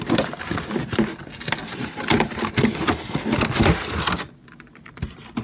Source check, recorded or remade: recorded